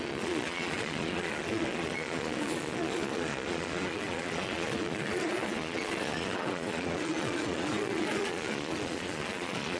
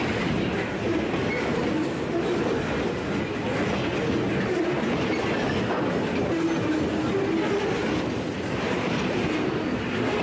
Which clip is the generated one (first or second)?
first